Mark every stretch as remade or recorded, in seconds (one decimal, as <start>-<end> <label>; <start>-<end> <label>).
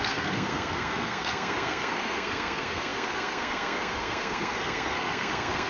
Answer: 0.0-5.7 remade